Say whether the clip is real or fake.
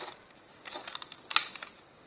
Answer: real